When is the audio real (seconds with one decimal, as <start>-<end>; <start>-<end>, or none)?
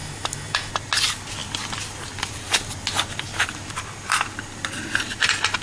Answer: 0.7-5.6